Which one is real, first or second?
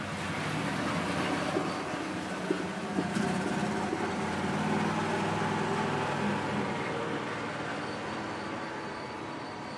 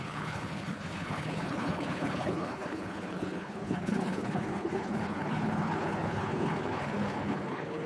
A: first